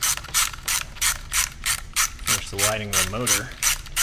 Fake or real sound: fake